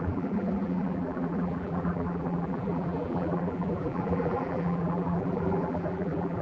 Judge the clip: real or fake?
fake